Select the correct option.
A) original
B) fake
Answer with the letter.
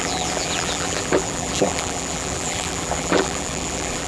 B